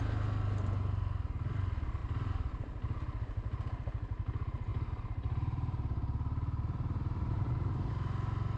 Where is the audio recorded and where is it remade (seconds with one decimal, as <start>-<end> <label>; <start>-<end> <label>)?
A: 0.0-2.0 recorded; 2.0-2.5 remade; 2.5-4.7 recorded; 4.7-7.9 remade; 7.9-8.6 recorded